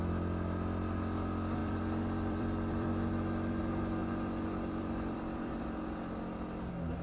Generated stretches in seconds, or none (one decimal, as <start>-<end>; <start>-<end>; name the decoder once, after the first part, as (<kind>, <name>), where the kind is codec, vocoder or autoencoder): 1.6-3.6 (vocoder, BigVGAN v2); 4.0-5.5